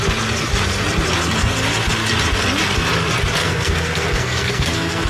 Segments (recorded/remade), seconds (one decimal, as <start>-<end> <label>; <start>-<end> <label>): 0.0-3.4 recorded; 3.4-5.1 remade